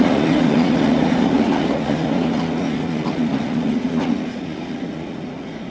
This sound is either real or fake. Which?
fake